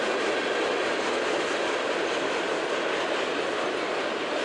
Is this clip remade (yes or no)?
no